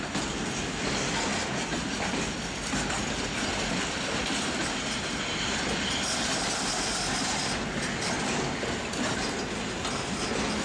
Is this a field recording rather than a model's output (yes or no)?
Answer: yes